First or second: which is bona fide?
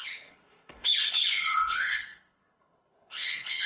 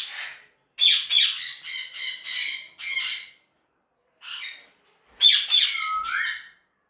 second